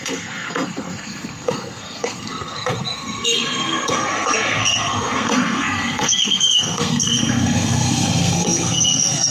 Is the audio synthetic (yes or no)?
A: yes